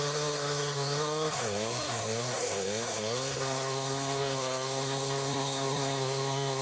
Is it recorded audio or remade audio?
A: remade